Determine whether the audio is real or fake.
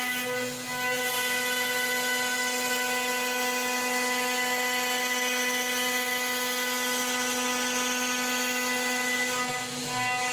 real